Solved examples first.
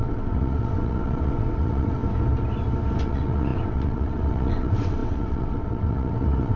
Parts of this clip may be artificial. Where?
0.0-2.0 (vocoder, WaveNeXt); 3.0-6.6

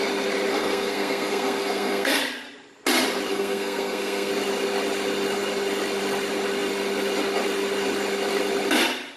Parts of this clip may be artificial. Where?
0.5-2.2 (codec, SNAC); 3.3-4.3

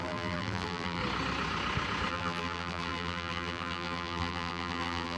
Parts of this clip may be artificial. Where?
0.0-1.0 (vocoder, BigVGAN v2); 2.1-5.2